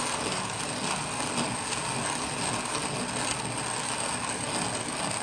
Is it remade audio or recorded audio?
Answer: recorded